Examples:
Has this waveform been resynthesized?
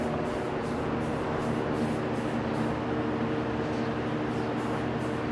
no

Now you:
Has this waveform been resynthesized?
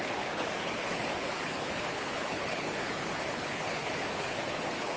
yes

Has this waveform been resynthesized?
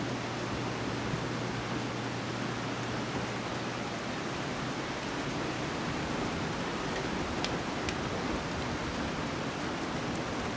no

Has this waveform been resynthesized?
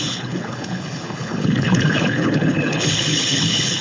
yes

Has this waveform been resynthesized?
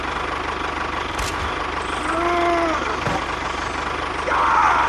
no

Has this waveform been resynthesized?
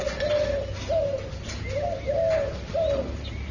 no